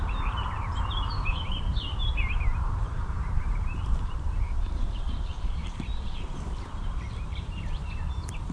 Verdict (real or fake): fake